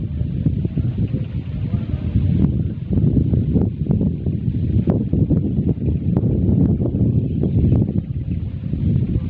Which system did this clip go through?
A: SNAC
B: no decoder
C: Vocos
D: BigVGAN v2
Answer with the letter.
B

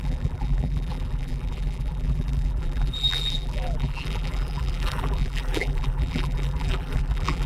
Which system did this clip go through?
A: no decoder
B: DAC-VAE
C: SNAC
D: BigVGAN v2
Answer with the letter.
D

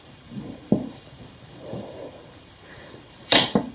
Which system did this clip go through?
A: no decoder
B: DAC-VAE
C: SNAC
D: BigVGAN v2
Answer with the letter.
D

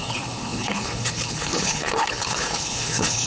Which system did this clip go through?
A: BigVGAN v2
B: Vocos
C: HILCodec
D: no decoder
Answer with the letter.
C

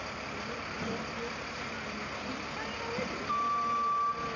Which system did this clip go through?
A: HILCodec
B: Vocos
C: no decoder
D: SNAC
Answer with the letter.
C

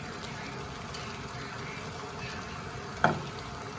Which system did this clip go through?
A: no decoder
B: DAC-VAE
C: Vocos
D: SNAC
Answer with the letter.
A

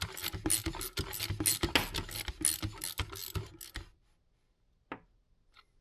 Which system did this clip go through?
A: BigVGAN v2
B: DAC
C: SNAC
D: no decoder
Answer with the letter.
D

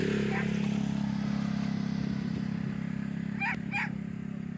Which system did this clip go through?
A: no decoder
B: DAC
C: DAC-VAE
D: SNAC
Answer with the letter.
A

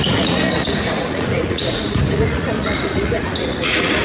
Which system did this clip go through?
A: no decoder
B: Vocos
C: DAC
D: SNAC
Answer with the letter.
B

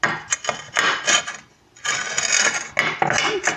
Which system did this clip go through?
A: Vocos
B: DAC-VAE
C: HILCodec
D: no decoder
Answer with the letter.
D